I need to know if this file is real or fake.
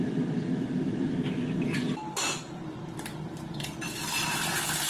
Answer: fake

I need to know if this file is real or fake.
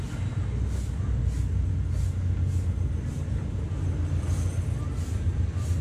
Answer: real